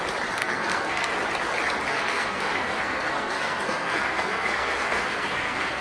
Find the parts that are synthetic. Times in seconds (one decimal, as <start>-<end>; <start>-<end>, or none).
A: 0.4-1.1; 1.9-5.8